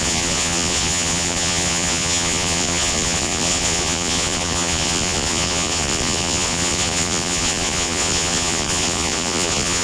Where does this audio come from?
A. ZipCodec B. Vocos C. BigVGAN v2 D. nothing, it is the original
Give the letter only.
B